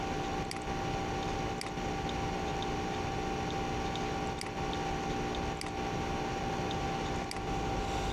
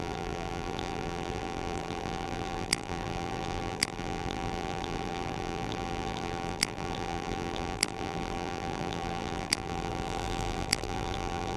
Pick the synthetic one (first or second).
second